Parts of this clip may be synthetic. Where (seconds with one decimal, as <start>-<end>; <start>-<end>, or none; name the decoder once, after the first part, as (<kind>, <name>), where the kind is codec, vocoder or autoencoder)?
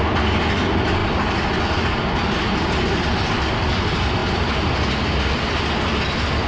none